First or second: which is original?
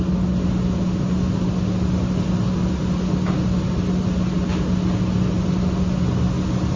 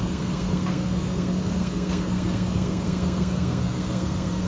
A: first